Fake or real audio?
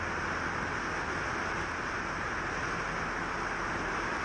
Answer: real